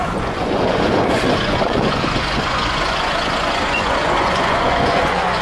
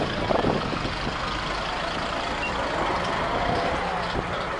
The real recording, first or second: second